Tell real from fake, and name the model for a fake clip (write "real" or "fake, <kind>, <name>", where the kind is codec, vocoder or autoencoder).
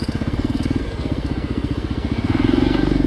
fake, codec, SNAC